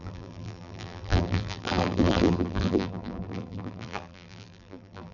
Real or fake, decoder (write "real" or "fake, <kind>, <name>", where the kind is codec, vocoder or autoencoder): fake, vocoder, BigVGAN v2